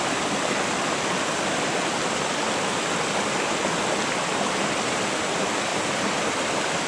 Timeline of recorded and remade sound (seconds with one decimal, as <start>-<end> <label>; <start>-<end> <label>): 0.0-5.7 recorded; 5.7-6.3 remade; 6.3-6.9 recorded